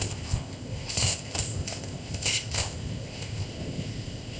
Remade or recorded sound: remade